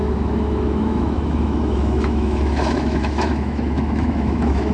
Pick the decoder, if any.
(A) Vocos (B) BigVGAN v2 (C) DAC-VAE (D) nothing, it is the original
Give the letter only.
C